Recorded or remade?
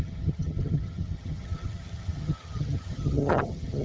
remade